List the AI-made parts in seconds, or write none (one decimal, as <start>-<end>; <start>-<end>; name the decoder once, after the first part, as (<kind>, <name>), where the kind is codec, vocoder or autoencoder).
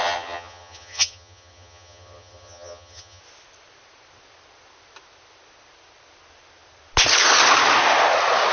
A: 0.0-3.2 (vocoder, HiFi-GAN)